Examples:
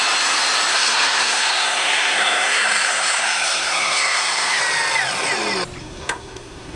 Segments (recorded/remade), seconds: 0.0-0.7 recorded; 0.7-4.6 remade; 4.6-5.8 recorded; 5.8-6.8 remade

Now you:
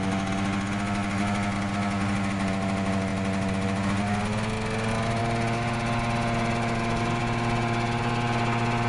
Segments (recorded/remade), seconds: 0.0-8.9 recorded

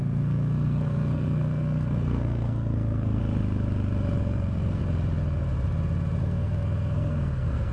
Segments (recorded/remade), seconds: 0.0-3.2 remade; 3.2-4.2 recorded; 4.2-4.8 remade; 4.8-6.2 recorded; 6.2-7.7 remade

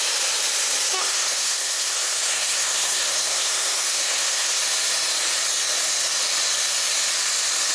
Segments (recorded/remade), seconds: 0.0-1.0 recorded; 1.0-4.6 remade; 4.6-7.7 recorded